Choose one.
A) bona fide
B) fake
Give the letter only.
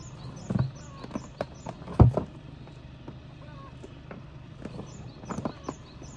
A